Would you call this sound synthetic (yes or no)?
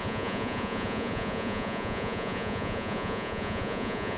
yes